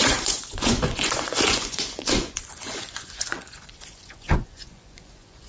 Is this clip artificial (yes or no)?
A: yes